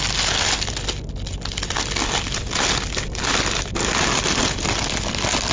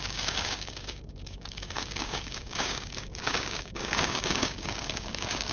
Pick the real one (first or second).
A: first